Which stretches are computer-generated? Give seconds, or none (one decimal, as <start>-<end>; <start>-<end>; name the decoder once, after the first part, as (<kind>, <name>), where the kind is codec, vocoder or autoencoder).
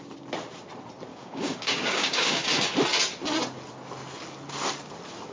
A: 1.1-2.5 (codec, DAC)